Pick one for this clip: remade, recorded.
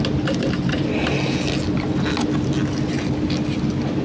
recorded